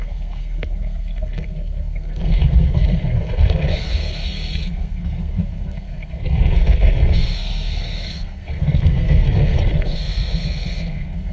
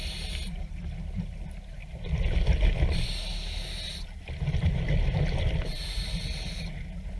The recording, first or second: second